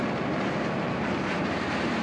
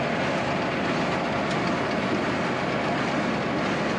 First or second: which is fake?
first